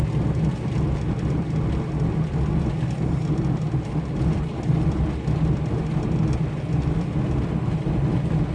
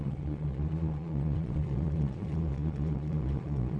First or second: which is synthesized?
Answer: second